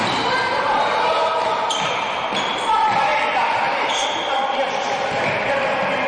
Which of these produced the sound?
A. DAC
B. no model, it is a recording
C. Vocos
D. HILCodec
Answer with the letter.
B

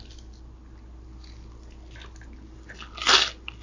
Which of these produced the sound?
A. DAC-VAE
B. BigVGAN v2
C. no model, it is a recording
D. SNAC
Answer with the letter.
C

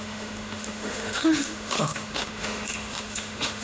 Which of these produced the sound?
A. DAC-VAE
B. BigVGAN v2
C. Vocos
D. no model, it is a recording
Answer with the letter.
A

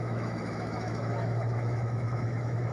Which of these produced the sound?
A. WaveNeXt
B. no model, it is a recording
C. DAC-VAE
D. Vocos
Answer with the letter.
C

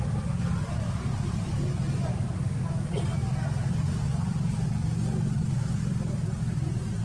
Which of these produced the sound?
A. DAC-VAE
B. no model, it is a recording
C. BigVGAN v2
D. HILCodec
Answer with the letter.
B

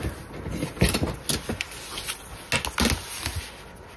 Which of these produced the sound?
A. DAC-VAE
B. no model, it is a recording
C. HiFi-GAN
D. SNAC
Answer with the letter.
B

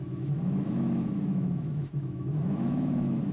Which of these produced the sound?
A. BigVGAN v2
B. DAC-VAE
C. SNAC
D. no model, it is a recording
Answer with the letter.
B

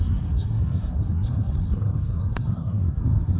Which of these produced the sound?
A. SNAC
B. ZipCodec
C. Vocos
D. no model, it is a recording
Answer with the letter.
A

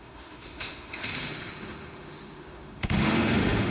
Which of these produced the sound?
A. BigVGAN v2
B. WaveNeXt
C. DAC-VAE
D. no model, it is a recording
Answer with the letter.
C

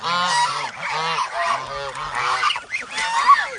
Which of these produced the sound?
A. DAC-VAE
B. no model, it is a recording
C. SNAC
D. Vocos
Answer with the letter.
B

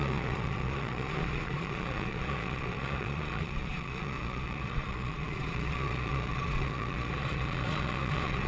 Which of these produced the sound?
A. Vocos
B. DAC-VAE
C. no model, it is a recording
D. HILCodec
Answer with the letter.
A